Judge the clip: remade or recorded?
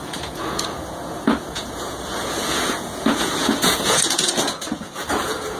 remade